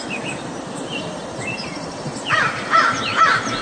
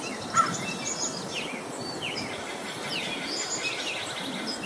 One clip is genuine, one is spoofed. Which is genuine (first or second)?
second